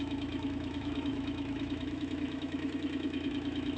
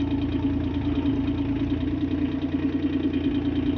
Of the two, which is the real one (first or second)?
second